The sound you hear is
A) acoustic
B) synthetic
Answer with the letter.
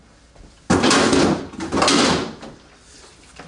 A